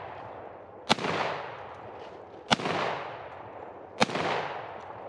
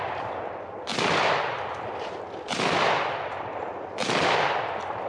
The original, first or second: first